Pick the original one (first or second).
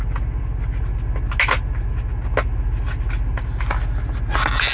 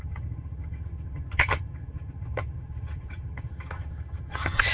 first